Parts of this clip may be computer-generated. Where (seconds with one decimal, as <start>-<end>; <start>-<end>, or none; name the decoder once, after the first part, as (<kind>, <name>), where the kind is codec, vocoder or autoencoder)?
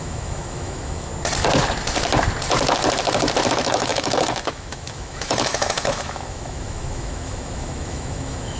0.0-1.1 (autoencoder, DAC-VAE); 3.5-8.6